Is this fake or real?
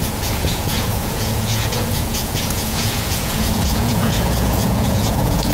fake